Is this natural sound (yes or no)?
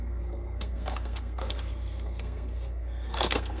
no